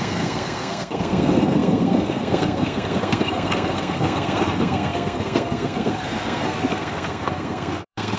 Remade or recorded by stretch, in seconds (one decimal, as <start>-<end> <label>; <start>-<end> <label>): 0.0-8.2 remade